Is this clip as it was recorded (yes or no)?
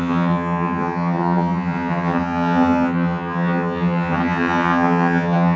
no